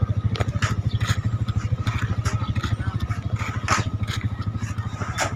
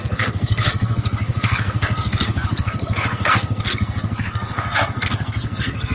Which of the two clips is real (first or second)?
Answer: first